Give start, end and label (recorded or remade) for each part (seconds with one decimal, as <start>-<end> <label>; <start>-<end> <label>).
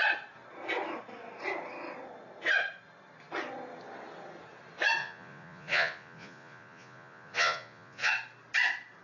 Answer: 0.0-5.0 recorded; 5.0-8.1 remade; 8.1-9.0 recorded